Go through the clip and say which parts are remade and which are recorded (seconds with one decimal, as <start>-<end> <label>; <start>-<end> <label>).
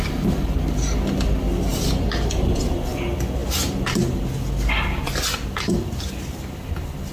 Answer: 0.0-7.1 recorded